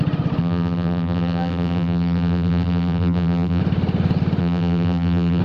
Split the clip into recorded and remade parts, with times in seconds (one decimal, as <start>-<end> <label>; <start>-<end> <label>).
0.0-0.4 recorded; 0.4-3.6 remade; 3.6-4.4 recorded; 4.4-5.4 remade